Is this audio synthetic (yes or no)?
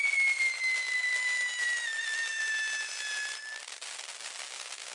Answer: no